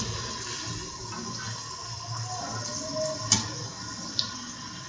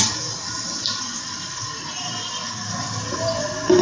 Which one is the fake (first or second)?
second